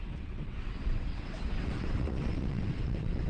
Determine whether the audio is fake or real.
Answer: fake